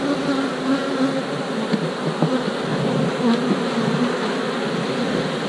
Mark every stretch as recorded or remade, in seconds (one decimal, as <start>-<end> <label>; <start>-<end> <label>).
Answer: 0.0-2.7 recorded; 2.7-3.2 remade; 3.2-5.5 recorded